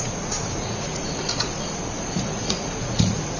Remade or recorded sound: remade